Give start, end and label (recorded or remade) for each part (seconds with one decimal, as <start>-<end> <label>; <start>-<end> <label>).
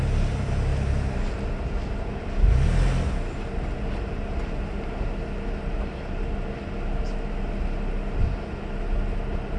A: 0.0-9.6 recorded